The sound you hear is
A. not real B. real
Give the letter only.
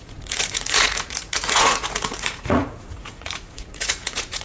A